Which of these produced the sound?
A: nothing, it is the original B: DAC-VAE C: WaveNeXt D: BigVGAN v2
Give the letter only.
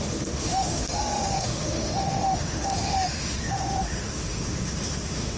B